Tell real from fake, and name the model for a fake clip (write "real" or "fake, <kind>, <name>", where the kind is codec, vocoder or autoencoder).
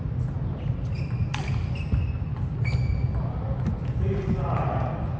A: real